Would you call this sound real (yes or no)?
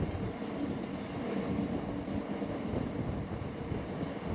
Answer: yes